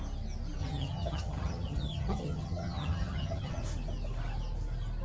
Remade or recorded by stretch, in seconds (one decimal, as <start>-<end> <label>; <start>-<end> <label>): 0.0-0.6 recorded; 0.6-3.6 remade; 3.6-5.0 recorded